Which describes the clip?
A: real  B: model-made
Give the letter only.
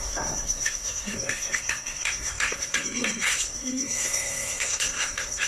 B